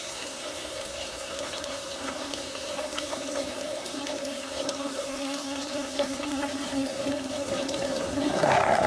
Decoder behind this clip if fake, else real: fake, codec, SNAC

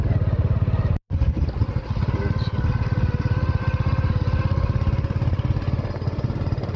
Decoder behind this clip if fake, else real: real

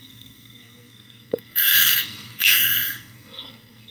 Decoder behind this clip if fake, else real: fake, codec, SNAC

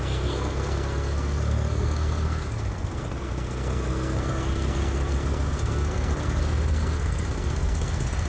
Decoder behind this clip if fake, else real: fake, codec, SNAC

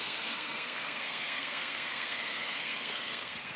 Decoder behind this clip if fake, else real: fake, codec, SNAC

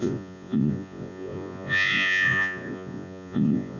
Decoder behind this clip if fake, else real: fake, vocoder, Vocos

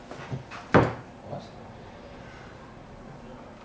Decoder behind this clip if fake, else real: real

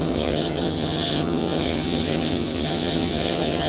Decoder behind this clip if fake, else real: fake, vocoder, HiFi-GAN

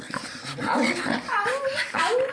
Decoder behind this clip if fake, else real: fake, vocoder, BigVGAN v2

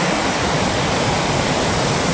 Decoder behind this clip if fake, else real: real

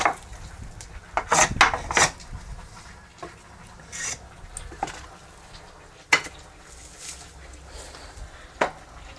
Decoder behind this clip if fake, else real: real